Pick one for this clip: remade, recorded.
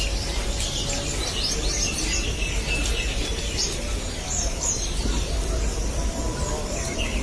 remade